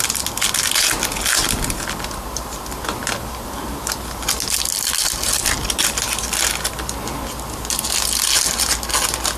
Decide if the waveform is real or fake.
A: real